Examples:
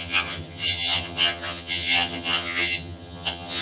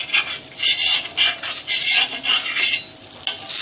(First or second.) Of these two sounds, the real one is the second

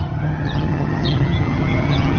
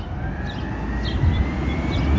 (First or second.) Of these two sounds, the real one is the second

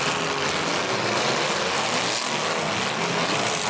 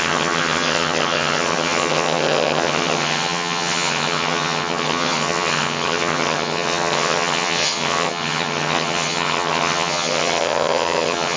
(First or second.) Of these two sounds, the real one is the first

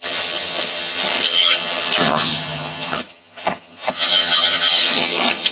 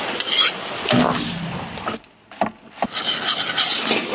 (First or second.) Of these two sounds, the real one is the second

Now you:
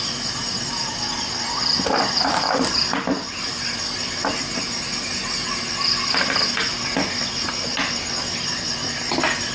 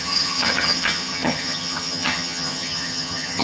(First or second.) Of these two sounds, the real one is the first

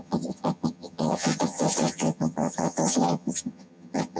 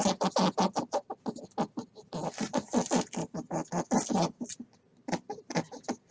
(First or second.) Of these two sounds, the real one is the second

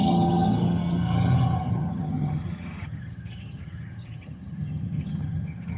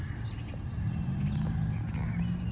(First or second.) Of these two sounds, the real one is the second